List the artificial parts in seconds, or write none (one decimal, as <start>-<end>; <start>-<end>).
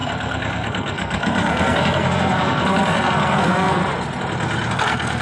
0.0-3.8; 4.7-5.2